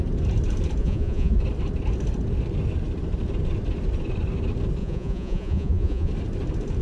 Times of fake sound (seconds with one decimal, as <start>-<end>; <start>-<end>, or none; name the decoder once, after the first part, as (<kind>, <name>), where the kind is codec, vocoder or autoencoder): 0.8-1.4 (vocoder, Vocos); 4.8-6.1